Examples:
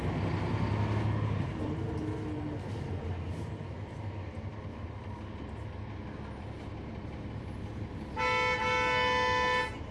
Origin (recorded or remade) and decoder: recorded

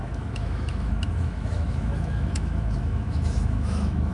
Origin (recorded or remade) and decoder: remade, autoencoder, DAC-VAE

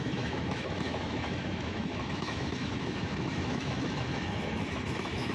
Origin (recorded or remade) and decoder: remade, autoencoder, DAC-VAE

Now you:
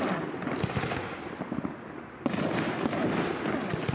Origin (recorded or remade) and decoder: recorded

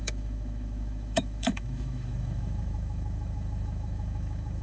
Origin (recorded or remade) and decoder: remade, autoencoder, DAC-VAE